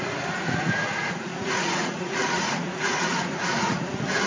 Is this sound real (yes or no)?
no